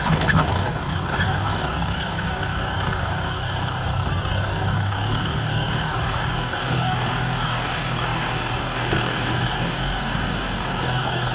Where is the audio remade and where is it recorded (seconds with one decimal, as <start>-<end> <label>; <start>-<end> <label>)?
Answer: 0.0-11.3 remade